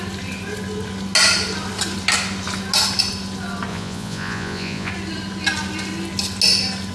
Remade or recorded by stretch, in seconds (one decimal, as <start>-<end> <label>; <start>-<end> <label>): 0.0-3.7 recorded; 3.7-4.9 remade; 4.9-6.9 recorded